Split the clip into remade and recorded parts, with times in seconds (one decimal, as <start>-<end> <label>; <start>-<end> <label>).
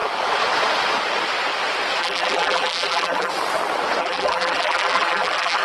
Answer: 0.0-2.0 recorded; 2.0-3.3 remade; 3.3-4.0 recorded; 4.0-5.6 remade